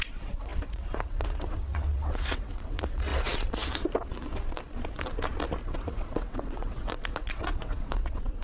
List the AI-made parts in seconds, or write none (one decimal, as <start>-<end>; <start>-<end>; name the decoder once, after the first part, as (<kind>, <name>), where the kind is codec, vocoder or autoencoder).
0.0-3.1 (vocoder, WaveNeXt); 5.6-8.4